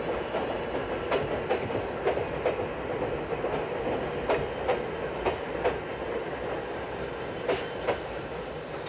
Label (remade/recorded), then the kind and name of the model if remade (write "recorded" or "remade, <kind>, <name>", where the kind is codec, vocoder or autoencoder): recorded